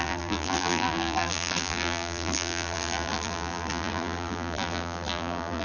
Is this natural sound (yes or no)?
no